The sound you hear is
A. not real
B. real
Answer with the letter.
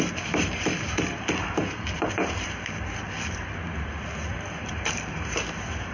A